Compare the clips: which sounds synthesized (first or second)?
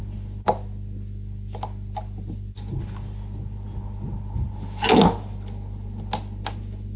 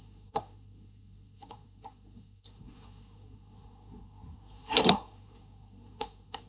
second